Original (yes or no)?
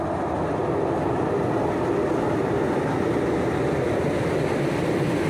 yes